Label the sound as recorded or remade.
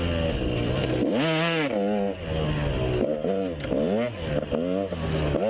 recorded